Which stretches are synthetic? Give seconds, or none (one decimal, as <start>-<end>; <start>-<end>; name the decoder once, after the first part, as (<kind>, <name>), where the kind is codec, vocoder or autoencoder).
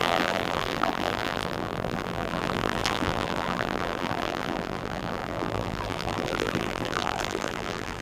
0.0-8.0 (vocoder, BigVGAN v2)